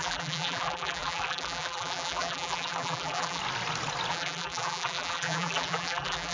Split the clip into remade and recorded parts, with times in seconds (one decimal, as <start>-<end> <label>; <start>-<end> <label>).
0.0-3.4 remade; 3.4-4.1 recorded; 4.1-6.3 remade